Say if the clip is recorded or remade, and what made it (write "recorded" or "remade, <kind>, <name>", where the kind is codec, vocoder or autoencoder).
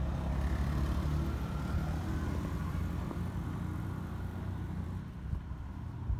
remade, vocoder, BigVGAN v2